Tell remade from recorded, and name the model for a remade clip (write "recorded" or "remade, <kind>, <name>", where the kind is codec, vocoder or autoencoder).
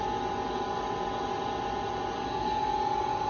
recorded